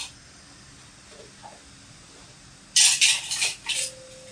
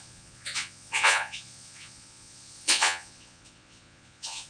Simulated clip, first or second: second